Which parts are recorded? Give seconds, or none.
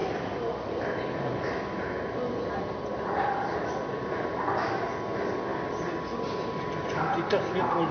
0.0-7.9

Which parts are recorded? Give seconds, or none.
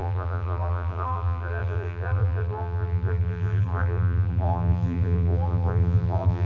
none